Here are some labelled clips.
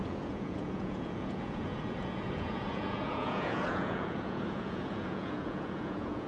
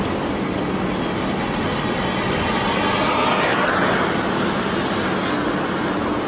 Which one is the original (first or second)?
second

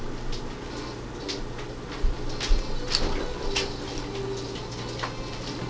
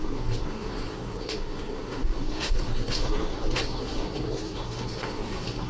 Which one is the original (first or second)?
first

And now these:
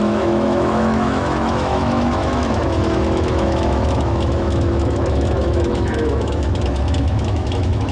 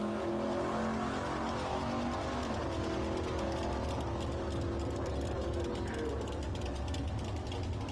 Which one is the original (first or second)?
second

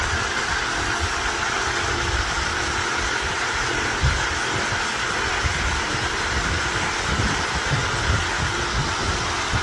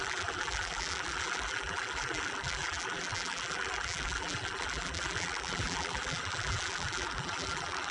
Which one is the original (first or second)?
first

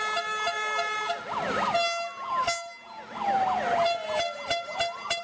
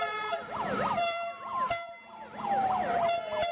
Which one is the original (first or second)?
first